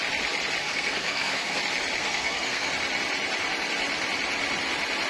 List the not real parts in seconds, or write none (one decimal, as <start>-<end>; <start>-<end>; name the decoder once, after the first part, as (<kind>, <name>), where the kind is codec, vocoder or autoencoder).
0.6-1.6 (codec, SNAC); 2.0-2.7